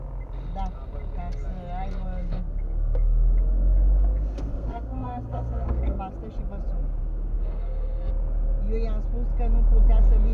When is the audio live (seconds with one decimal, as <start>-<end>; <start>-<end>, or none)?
0.0-2.2; 6.0-7.0; 8.1-10.3